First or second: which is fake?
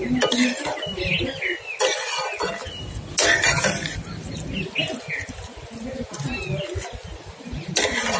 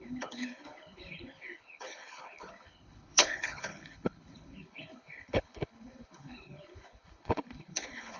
second